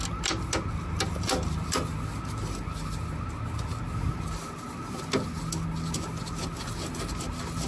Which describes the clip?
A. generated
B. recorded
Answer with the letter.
B